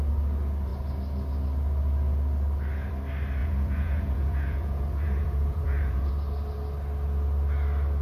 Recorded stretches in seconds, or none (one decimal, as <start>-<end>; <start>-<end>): 0.0-3.4; 6.1-8.0